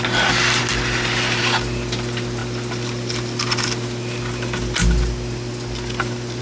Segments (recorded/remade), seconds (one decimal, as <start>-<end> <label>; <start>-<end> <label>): 0.0-6.4 recorded